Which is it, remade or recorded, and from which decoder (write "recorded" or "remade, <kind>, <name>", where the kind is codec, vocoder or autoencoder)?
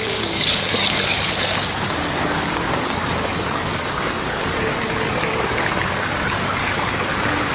remade, codec, DAC